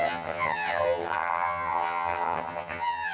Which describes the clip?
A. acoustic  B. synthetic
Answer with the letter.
B